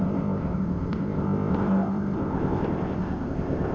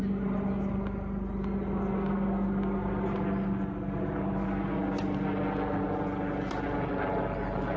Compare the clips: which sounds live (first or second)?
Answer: second